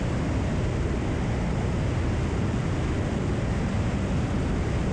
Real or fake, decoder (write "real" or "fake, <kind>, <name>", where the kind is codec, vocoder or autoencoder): real